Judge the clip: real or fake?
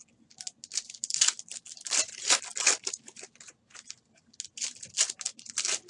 real